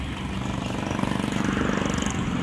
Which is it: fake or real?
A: real